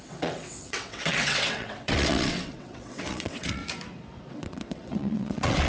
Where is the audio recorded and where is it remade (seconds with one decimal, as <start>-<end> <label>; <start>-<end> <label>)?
0.0-3.6 remade; 3.6-4.3 recorded; 4.3-5.7 remade